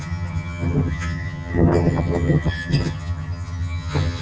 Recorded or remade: remade